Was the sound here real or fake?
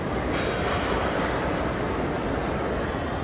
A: real